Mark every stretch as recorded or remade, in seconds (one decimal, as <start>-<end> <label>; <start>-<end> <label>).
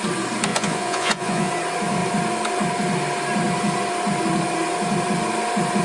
0.0-0.5 recorded; 0.5-1.5 remade; 1.5-5.8 recorded